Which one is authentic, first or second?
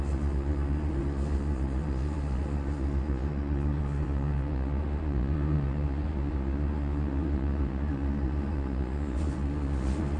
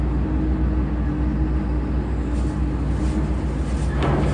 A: second